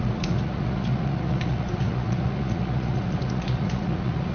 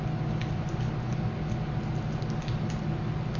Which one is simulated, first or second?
first